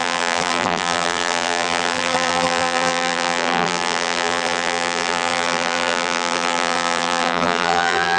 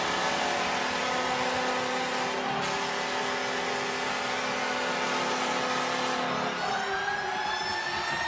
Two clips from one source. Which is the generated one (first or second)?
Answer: first